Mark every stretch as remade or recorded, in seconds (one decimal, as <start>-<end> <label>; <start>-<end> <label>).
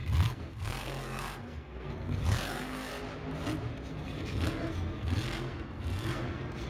0.0-2.9 remade; 2.9-3.9 recorded; 3.9-6.7 remade